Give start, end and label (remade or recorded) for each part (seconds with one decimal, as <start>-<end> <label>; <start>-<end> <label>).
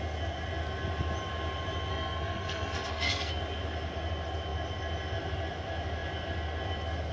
0.0-1.9 recorded; 1.9-3.4 remade; 3.4-7.1 recorded